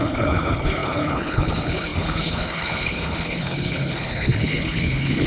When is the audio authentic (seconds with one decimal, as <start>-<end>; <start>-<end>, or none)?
none